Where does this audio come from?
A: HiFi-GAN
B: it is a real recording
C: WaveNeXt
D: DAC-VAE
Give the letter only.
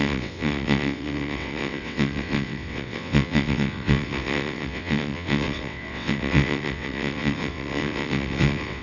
C